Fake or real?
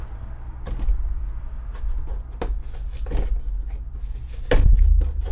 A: real